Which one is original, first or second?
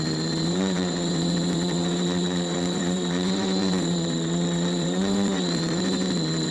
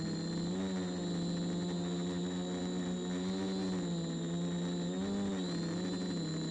second